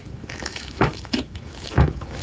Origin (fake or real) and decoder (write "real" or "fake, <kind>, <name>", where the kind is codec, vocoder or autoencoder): fake, autoencoder, DAC-VAE